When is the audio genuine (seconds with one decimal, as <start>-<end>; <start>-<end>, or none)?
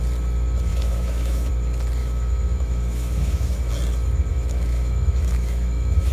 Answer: 0.0-0.7; 1.5-2.0; 3.7-4.3